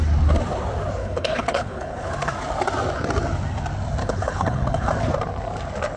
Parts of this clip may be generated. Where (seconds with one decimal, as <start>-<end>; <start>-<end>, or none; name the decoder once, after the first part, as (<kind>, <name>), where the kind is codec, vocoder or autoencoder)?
1.0-2.1 (codec, HILCodec); 4.0-4.9